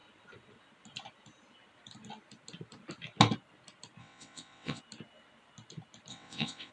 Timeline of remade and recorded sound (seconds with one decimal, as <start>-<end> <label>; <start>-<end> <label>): 0.0-4.0 recorded; 4.0-4.8 remade; 4.8-6.1 recorded; 6.1-6.7 remade